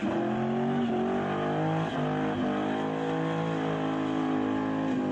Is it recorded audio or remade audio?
recorded